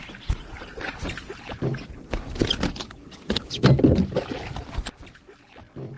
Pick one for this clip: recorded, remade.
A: recorded